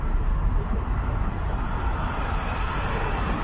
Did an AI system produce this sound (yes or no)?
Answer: no